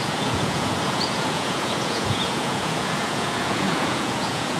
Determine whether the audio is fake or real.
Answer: fake